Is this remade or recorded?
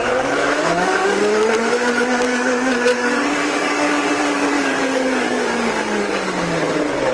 remade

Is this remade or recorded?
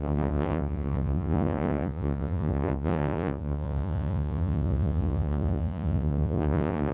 remade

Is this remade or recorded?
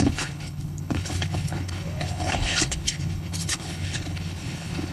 remade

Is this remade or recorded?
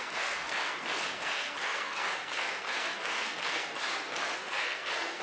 remade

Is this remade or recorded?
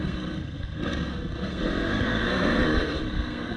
remade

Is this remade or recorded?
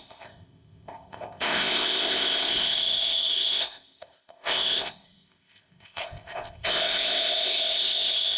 remade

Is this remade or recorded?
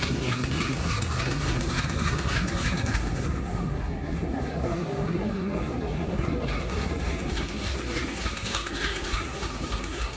remade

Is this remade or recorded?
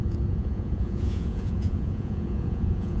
remade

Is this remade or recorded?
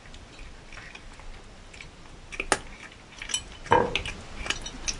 recorded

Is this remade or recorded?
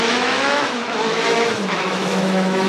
remade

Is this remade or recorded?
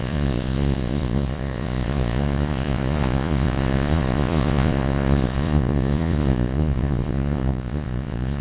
remade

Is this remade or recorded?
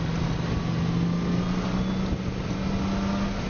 recorded